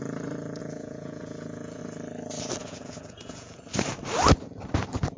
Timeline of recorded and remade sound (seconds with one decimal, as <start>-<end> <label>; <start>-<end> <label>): 0.0-0.6 recorded; 0.6-1.8 remade; 1.8-2.6 recorded; 2.6-3.6 remade; 3.6-5.2 recorded